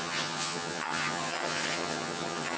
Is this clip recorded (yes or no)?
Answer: no